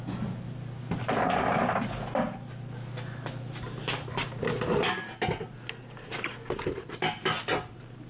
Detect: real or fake real